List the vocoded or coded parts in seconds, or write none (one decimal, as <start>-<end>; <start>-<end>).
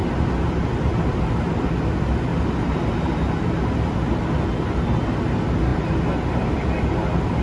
none